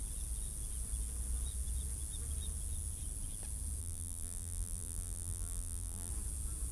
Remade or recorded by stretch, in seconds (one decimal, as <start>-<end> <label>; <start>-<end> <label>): 0.0-3.8 recorded; 3.8-6.1 remade; 6.1-6.7 recorded